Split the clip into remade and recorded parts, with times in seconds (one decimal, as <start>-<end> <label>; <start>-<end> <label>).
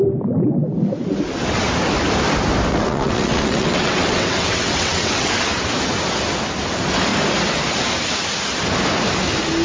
0.0-2.7 recorded; 2.7-5.3 remade; 5.3-9.6 recorded